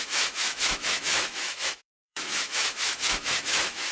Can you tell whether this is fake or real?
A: fake